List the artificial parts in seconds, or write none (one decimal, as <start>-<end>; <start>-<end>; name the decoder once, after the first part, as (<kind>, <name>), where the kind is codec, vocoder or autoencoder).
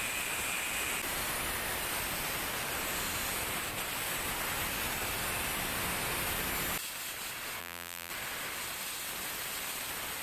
7.6-8.1 (vocoder, BigVGAN v2)